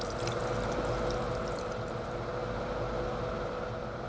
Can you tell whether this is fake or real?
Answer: real